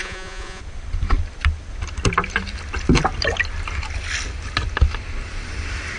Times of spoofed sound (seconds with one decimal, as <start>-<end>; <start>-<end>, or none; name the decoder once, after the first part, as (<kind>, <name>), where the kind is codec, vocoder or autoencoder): 0.0-0.6 (vocoder, Vocos)